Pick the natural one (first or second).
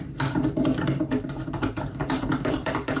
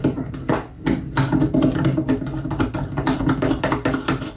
second